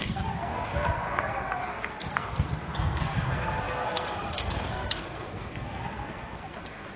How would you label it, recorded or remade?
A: remade